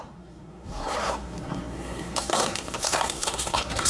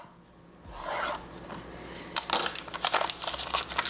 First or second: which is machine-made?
first